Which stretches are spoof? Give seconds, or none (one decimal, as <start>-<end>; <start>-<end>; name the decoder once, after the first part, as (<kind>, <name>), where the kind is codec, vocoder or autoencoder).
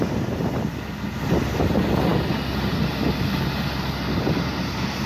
none